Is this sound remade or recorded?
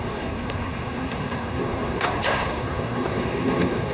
remade